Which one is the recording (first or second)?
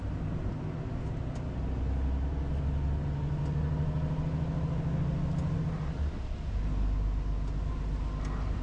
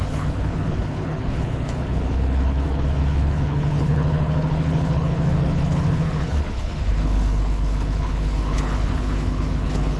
first